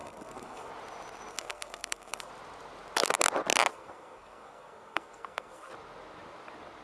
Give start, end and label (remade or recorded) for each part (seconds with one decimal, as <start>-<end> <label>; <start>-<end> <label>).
0.0-0.7 remade; 0.7-1.3 recorded; 1.3-2.3 remade; 2.3-3.7 recorded; 3.7-5.7 remade; 5.7-6.8 recorded